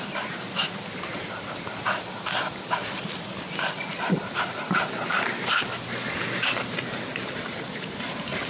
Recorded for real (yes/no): yes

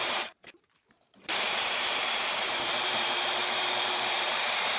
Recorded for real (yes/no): no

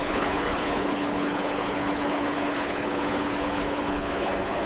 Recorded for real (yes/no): no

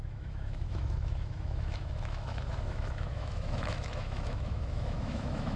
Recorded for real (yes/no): no